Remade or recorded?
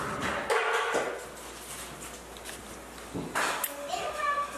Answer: recorded